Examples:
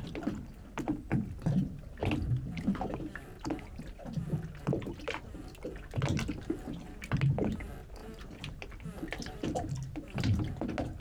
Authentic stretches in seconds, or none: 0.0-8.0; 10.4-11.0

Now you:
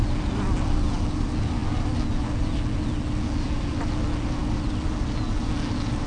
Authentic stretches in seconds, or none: 0.0-6.1

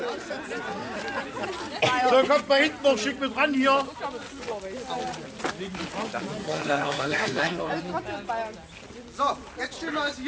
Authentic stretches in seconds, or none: 0.0-6.4; 7.7-10.3

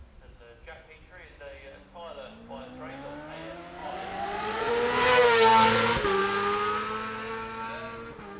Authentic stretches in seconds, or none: 0.0-3.8; 4.7-8.4